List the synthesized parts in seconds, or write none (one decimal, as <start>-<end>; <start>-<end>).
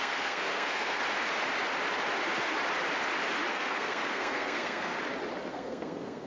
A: 0.0-1.0; 3.5-4.9; 5.5-6.3